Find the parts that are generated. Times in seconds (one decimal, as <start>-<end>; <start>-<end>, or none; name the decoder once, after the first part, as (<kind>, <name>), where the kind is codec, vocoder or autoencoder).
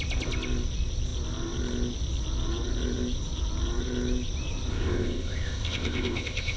4.7-6.6 (codec, ZipCodec)